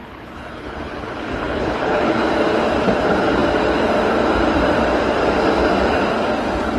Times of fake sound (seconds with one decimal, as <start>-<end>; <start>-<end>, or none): 0.0-2.2